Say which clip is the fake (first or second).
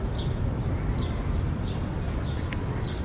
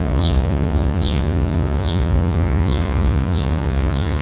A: second